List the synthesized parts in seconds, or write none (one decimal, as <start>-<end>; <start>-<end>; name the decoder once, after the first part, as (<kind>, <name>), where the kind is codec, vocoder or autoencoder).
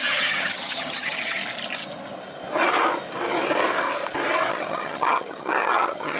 0.0-1.4 (vocoder, HiFi-GAN); 4.5-6.2